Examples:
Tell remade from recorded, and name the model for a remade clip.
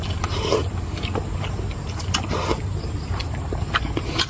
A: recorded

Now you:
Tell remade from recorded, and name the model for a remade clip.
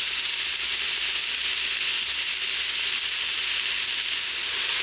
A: recorded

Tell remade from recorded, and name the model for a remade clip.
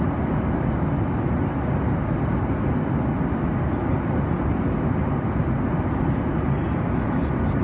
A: recorded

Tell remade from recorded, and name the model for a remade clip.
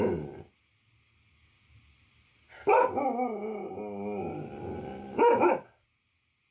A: recorded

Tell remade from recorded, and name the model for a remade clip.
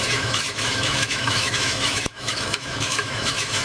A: remade, autoencoder, DAC-VAE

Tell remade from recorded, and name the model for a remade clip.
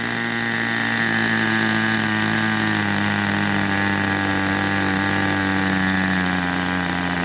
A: recorded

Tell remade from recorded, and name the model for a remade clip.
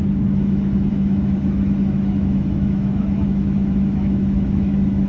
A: remade, autoencoder, DAC-VAE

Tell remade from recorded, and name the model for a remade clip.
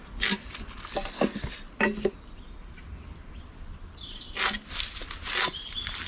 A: recorded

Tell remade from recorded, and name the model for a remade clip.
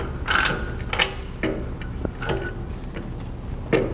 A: recorded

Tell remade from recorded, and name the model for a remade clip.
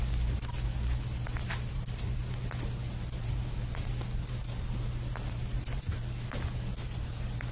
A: recorded